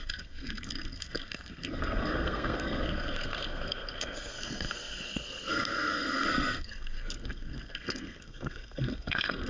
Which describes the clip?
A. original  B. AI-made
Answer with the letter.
B